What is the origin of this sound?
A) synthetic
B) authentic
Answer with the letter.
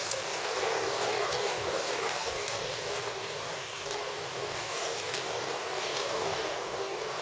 A